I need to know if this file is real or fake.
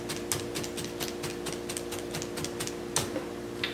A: real